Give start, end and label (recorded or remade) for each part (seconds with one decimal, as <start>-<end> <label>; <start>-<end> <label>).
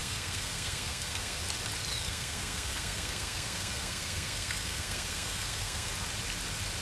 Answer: 0.0-1.4 remade; 1.4-1.9 recorded; 1.9-5.9 remade; 5.9-6.8 recorded